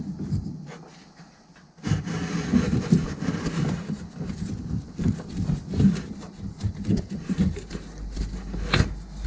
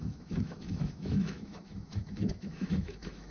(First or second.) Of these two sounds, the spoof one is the second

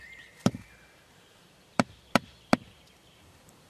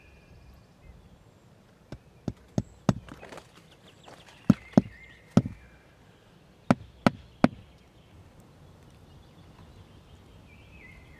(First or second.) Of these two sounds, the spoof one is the first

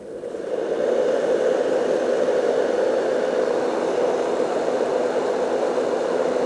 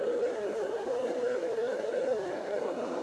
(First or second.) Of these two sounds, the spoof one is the second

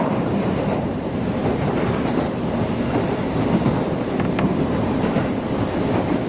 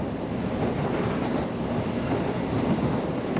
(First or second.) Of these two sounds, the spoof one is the first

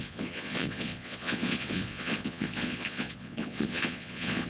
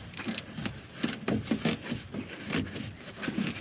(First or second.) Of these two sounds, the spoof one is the first